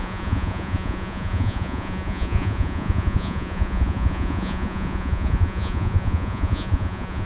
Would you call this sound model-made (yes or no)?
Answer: yes